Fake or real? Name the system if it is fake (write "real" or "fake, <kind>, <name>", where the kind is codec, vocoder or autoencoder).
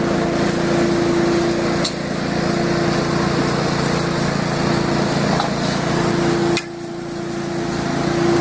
real